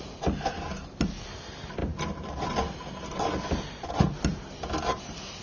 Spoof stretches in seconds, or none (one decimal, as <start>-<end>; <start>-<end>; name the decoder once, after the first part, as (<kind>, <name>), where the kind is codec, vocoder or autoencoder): none